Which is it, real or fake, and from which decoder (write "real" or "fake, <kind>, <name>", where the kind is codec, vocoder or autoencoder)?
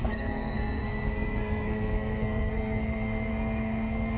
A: fake, codec, SNAC